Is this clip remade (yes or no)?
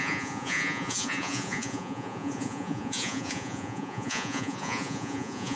yes